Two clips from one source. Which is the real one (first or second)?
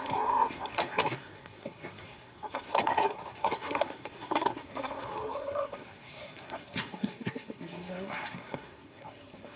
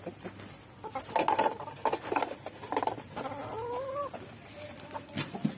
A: second